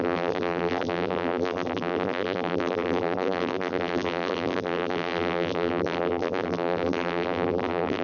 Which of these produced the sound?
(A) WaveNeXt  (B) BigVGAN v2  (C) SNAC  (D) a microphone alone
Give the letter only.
B